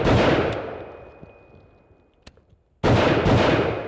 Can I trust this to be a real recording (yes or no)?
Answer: yes